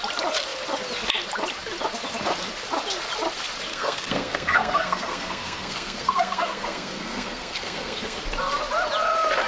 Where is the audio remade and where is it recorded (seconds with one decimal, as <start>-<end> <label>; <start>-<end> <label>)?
0.0-3.7 recorded; 3.7-8.2 remade; 8.2-9.5 recorded